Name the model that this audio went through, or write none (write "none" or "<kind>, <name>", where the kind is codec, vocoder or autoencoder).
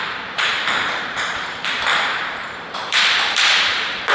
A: vocoder, BigVGAN v2